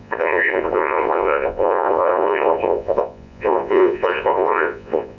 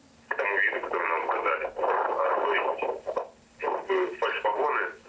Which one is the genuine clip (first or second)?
second